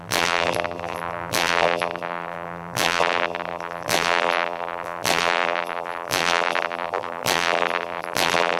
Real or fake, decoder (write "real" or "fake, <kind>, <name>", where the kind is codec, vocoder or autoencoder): fake, vocoder, BigVGAN v2